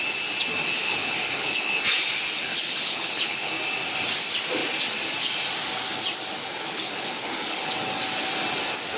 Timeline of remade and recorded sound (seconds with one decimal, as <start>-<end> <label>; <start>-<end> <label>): 0.0-0.7 recorded; 0.7-1.8 remade; 1.8-2.5 recorded; 2.5-3.5 remade; 3.5-6.4 recorded; 6.4-7.7 remade; 7.7-9.0 recorded